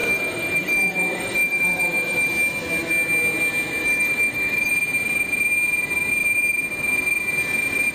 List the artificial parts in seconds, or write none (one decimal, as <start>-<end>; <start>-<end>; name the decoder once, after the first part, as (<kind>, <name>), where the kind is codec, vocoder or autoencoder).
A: 0.0-2.3 (autoencoder, DAC-VAE); 3.8-4.7